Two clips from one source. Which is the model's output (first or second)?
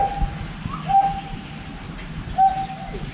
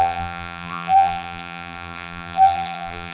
second